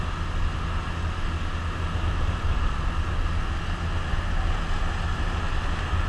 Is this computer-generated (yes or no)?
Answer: no